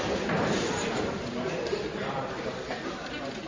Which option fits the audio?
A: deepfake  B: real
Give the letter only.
B